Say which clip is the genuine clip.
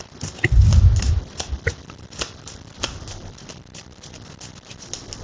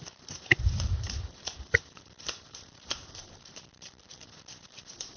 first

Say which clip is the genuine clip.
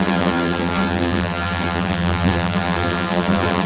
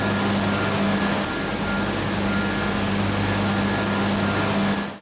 second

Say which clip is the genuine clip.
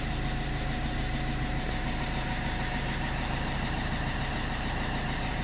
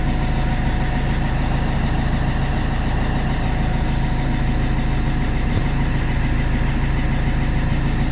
second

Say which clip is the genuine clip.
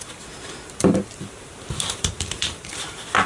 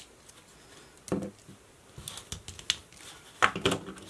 second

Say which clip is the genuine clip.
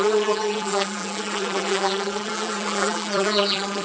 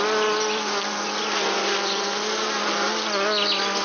second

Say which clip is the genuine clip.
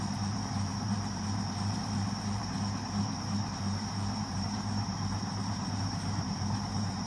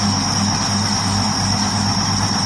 second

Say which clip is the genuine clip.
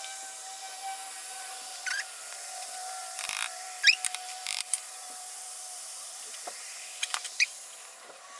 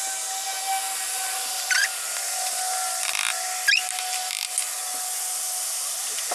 second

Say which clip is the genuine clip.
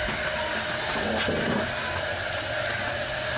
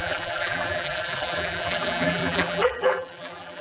first